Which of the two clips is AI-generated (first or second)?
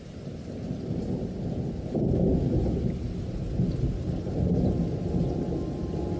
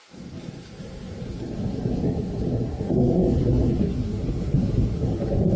second